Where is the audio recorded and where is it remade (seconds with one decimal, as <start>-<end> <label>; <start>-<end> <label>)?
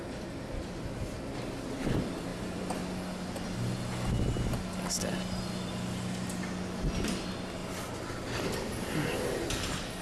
0.0-10.0 recorded